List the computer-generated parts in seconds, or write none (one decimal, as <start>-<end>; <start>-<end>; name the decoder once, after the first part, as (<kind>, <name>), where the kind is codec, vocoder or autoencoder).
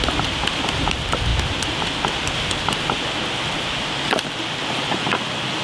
none